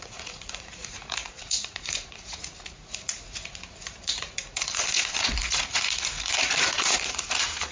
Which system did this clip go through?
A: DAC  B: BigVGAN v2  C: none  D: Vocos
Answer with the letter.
D